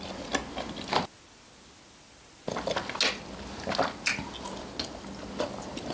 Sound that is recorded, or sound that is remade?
recorded